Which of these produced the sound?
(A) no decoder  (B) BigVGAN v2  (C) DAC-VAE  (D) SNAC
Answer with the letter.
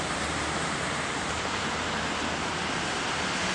A